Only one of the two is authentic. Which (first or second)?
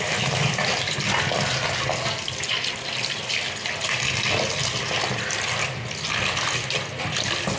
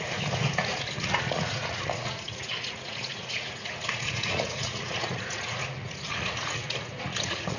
first